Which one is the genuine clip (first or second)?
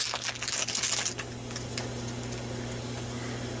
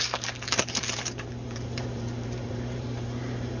first